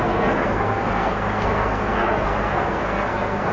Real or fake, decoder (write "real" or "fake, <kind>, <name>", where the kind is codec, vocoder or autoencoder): fake, codec, SNAC